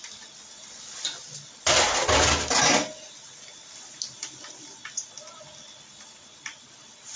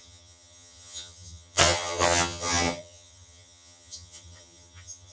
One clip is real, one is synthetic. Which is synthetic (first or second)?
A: second